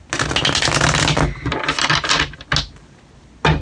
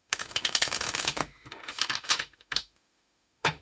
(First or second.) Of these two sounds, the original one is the first